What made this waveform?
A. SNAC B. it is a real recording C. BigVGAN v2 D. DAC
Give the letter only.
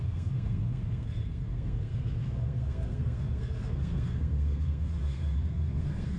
A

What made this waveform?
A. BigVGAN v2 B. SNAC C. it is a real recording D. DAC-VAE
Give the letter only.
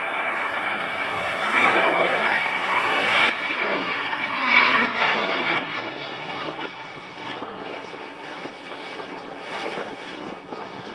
B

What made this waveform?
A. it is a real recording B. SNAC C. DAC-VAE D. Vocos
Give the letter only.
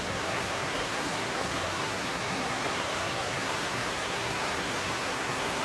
B